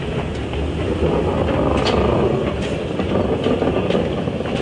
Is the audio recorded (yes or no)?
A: yes